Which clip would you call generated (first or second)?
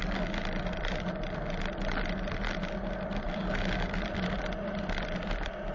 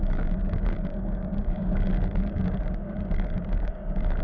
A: second